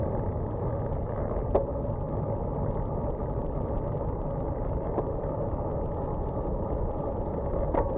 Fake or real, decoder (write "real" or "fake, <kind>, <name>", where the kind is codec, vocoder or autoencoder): real